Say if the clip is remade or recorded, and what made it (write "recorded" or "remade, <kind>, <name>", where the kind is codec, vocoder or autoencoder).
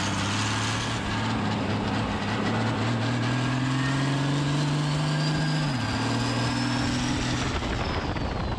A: recorded